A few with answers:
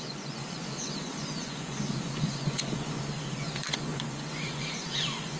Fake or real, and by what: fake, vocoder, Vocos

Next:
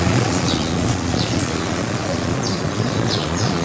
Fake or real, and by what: fake, vocoder, Vocos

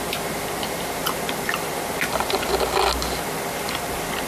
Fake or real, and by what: real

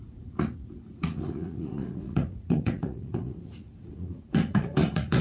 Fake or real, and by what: fake, vocoder, Vocos